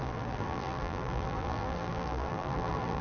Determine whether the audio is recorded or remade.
remade